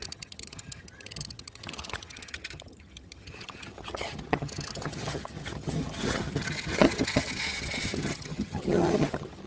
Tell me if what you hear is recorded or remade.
remade